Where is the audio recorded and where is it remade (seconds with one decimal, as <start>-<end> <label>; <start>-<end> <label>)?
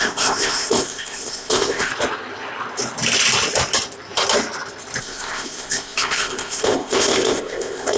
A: 0.0-1.9 remade; 1.9-5.0 recorded; 5.0-8.0 remade